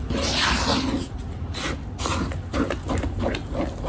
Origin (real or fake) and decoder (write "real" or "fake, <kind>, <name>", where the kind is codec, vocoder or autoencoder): real